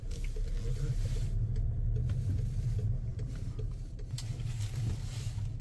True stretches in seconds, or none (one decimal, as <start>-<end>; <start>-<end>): 0.0-3.1; 4.6-5.6